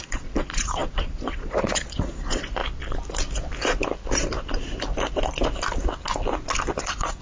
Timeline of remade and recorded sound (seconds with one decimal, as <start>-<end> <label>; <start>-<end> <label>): 0.0-2.6 remade; 2.6-6.7 recorded; 6.7-7.2 remade